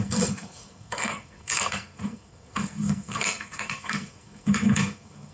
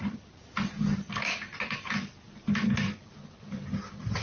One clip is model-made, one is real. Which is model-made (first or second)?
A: first